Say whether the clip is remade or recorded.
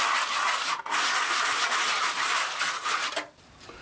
recorded